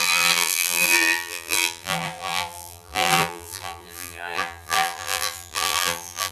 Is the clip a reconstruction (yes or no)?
yes